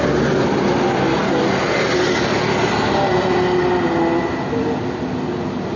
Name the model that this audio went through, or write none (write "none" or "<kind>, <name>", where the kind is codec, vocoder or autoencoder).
none